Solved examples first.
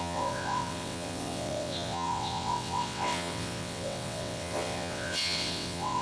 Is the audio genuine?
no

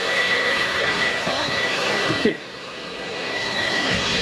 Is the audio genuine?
no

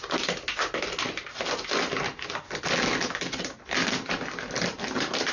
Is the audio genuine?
yes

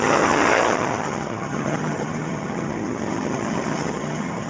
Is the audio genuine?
no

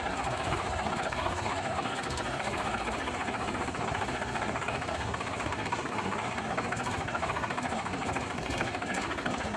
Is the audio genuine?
no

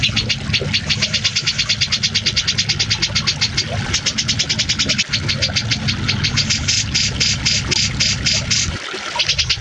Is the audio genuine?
yes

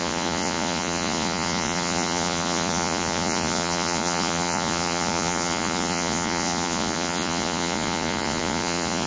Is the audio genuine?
no